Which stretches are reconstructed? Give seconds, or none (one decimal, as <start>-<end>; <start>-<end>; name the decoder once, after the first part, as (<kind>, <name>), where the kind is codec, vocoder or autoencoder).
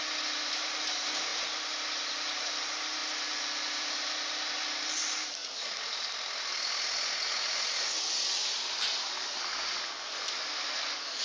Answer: none